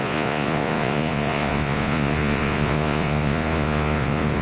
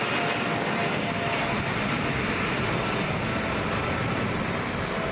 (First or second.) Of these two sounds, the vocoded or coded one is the first